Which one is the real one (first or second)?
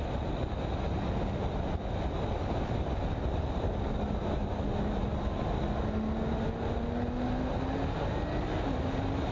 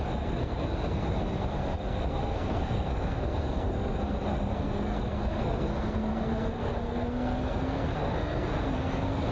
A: first